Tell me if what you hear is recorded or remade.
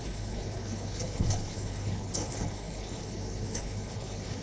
remade